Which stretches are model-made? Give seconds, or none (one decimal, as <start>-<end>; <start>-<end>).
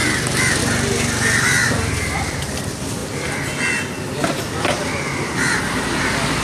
none